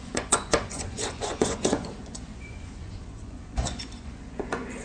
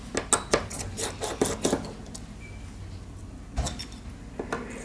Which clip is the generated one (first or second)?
first